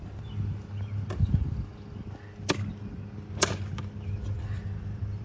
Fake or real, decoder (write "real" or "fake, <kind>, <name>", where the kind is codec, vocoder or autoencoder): real